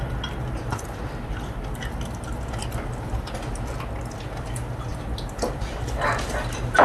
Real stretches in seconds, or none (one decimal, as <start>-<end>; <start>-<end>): 0.0-6.8